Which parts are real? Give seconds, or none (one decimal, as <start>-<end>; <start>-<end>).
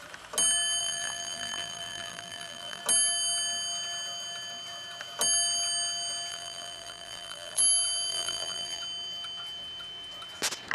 0.0-0.8; 2.8-6.3; 7.6-8.1; 8.8-10.7